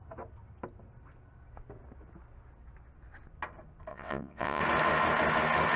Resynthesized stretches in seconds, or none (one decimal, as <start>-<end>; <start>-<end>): 3.9-4.6